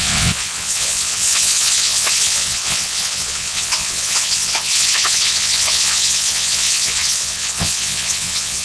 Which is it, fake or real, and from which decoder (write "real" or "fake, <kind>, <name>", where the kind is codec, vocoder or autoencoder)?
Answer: fake, vocoder, WaveNeXt